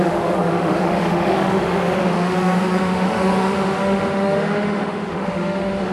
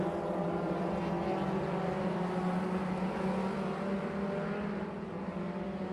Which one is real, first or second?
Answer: second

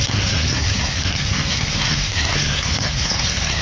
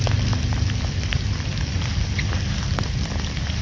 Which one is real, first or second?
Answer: second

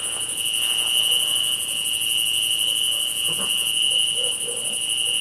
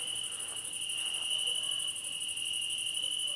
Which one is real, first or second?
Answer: second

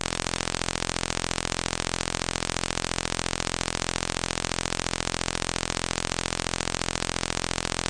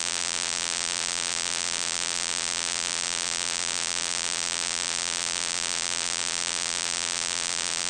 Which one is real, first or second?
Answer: first